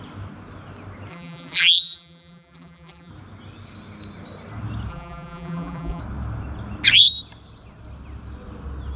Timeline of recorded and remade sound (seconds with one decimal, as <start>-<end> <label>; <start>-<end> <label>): 0.0-1.1 recorded; 1.1-3.1 remade; 3.1-4.9 recorded; 4.9-6.0 remade; 6.0-9.0 recorded